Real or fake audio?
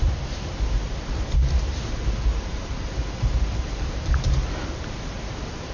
fake